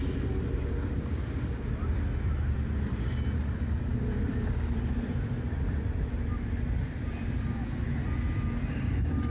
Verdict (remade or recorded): remade